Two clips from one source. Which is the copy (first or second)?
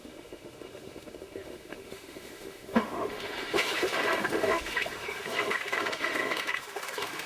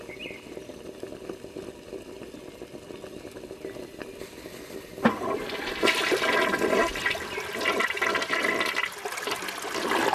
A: first